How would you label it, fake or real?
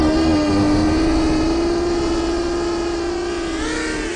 real